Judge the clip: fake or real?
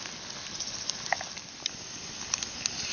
real